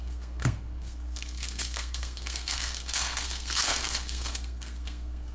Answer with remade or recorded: remade